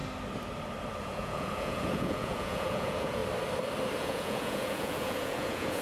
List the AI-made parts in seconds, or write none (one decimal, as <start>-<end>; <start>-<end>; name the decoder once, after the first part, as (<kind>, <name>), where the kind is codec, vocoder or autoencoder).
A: 1.0-3.2 (vocoder, Vocos); 4.0-5.8